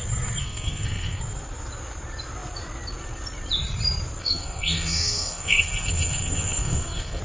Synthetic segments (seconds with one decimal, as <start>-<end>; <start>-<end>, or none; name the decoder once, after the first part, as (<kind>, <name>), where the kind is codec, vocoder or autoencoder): 0.4-1.2 (codec, SNAC); 4.2-7.2

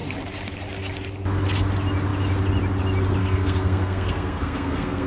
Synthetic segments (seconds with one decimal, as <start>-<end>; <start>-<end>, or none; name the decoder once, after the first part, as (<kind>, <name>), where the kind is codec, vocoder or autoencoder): 3.2-5.1 (codec, SNAC)

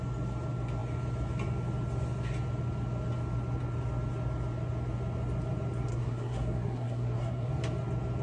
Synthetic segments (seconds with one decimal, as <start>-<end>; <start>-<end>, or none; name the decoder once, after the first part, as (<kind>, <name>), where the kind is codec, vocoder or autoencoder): 5.9-7.5 (codec, SNAC)

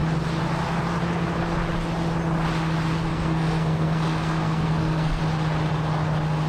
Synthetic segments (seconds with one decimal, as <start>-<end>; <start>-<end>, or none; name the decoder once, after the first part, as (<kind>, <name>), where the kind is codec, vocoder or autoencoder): 3.1-5.2 (codec, SNAC)

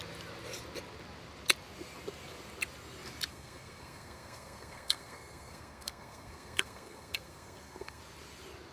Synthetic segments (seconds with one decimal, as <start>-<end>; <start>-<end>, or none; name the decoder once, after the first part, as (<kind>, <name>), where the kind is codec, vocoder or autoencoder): 3.3-8.0 (codec, SNAC)

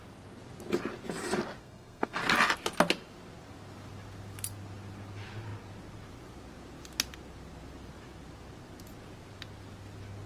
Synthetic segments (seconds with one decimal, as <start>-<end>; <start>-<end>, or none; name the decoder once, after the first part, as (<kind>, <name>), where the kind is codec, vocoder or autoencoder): 1.6-2.2 (codec, SNAC)

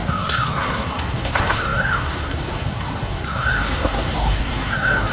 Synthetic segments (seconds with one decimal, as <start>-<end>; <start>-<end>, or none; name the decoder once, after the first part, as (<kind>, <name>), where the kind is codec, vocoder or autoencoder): 0.0-5.1 (codec, SNAC)

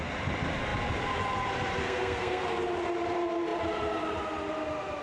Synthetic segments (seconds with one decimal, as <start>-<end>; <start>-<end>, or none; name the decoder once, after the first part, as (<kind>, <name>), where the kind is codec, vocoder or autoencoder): 1.8-2.4 (codec, SNAC)